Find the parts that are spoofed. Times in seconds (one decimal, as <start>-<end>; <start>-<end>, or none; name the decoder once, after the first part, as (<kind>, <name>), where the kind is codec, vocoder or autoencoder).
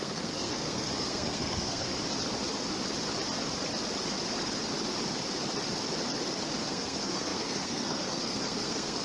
0.0-1.9 (codec, SNAC); 6.7-9.0